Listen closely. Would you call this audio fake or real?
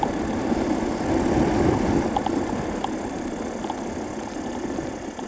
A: real